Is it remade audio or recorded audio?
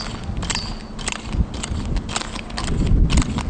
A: recorded